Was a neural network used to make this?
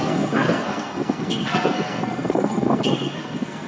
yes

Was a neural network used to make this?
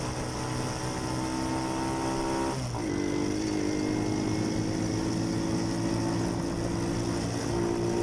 no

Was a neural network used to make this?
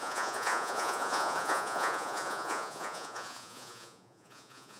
yes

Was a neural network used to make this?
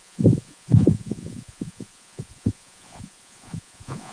yes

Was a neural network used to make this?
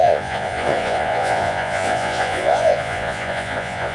yes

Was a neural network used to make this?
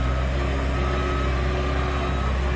no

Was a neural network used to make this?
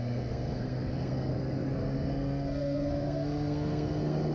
yes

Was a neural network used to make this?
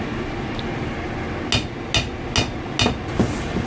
no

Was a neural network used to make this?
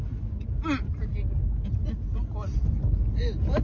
no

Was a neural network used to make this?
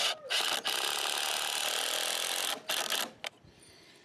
no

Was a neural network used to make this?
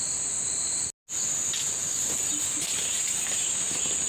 no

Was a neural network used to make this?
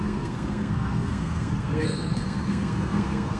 yes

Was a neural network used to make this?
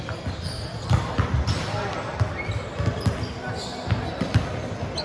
no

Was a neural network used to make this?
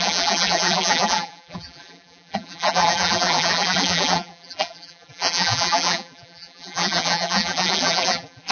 yes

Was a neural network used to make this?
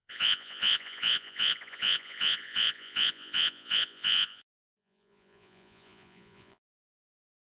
yes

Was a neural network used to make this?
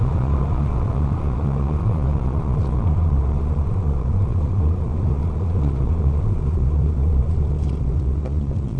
yes